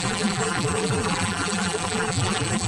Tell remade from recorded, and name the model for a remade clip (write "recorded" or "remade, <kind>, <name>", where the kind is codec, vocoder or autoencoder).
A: remade, vocoder, BigVGAN v2